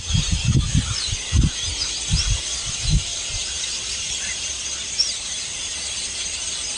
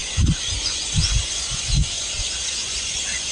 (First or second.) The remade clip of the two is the second